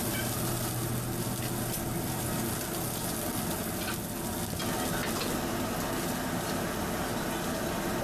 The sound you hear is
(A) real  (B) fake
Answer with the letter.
A